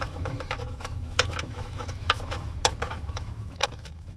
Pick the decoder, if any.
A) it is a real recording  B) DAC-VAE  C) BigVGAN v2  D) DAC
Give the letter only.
B